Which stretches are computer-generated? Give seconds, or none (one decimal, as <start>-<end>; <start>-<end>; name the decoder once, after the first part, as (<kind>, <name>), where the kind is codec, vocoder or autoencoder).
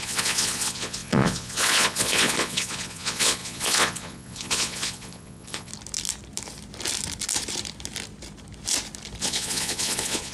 0.0-5.7 (vocoder, Vocos); 9.2-10.3